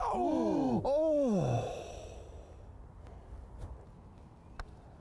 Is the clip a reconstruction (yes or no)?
no